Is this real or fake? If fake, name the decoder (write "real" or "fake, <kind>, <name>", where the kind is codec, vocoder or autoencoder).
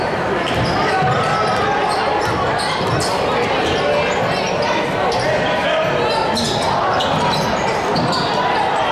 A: fake, vocoder, BigVGAN v2